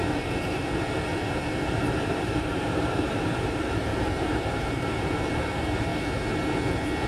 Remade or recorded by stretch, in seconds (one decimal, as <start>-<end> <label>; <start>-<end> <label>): 0.0-5.9 remade; 5.9-7.1 recorded